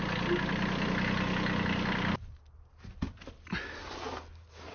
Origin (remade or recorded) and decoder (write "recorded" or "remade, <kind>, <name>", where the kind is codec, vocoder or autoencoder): recorded